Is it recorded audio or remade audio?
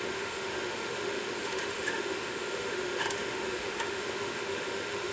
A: remade